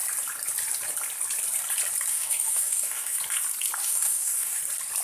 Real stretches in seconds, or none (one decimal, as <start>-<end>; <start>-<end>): 0.0-2.1; 3.2-3.8; 4.6-5.0